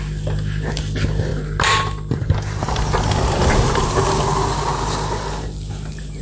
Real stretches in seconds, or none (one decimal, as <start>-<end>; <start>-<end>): 0.0-6.2